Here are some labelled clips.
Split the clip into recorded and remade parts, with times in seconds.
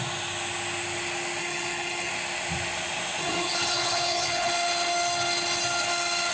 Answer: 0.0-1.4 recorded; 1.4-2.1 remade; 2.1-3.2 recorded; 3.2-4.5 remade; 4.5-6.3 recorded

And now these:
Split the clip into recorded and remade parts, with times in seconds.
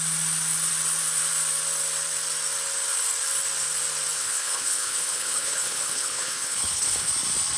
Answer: 0.0-4.2 recorded; 4.2-7.1 remade; 7.1-7.6 recorded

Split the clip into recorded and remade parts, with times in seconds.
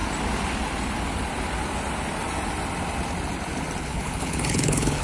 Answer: 0.0-3.8 recorded; 3.8-5.0 remade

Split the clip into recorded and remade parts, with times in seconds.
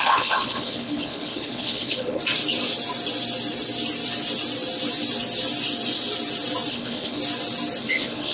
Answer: 0.0-2.2 remade; 2.2-6.7 recorded; 6.7-7.2 remade; 7.2-7.8 recorded; 7.8-8.3 remade